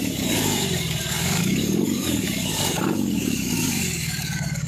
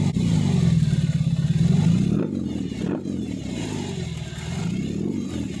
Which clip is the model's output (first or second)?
first